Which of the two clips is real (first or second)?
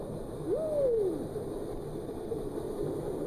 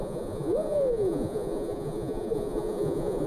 first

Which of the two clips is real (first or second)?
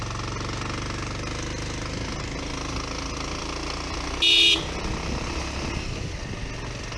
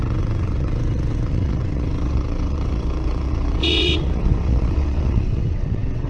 first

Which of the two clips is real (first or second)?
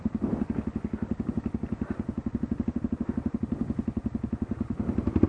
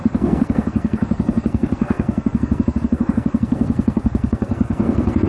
first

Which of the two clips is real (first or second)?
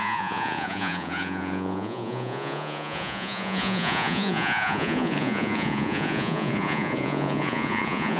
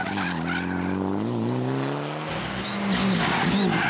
second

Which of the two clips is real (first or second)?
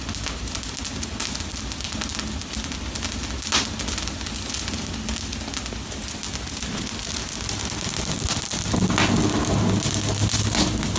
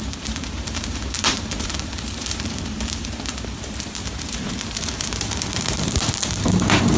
first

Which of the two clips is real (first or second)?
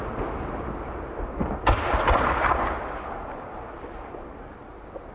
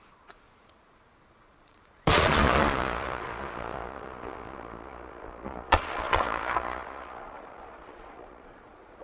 first